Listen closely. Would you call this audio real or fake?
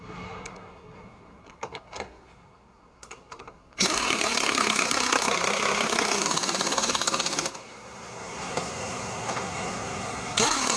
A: fake